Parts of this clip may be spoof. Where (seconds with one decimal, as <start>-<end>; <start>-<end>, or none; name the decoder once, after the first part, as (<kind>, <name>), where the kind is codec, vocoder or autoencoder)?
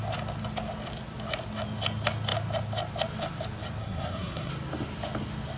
3.8-4.5 (codec, SNAC)